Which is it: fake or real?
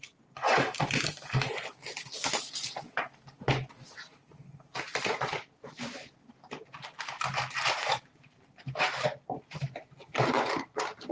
real